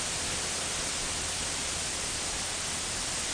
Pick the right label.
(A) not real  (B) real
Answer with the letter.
B